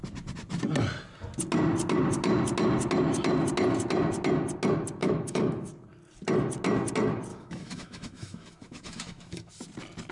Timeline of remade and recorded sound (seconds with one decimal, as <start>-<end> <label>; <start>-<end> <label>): 0.0-5.0 recorded; 5.0-5.7 remade; 5.7-7.3 recorded; 7.3-9.5 remade; 9.5-10.1 recorded